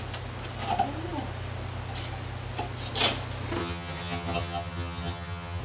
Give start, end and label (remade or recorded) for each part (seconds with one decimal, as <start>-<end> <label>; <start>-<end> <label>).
0.0-3.6 recorded; 3.6-5.6 remade